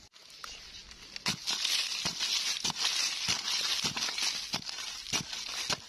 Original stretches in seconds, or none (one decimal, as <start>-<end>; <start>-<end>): 0.0-5.9